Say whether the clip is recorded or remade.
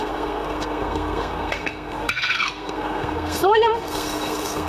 remade